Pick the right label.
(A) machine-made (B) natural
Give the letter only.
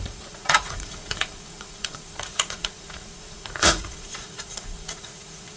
A